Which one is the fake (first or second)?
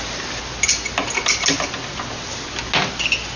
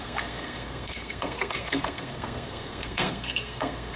second